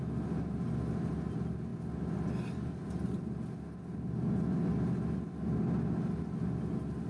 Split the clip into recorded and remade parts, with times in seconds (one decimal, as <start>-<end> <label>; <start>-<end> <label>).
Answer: 0.0-7.1 recorded